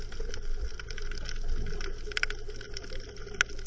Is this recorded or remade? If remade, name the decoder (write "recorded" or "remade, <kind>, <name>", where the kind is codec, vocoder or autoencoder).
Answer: recorded